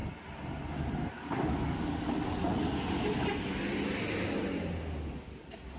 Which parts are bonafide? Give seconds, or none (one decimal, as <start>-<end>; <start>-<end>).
0.0-1.1; 2.5-5.8